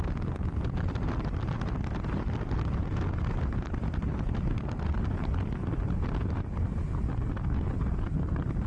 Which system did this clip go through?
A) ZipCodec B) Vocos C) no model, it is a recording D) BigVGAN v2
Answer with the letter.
D